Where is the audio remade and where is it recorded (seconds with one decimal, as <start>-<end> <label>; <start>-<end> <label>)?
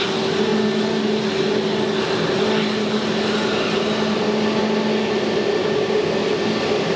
0.0-5.6 recorded; 5.6-6.1 remade; 6.1-7.0 recorded